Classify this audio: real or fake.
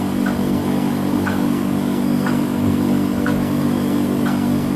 fake